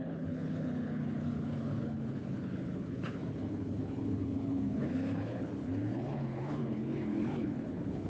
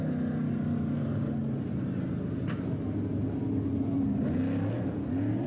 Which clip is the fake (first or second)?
first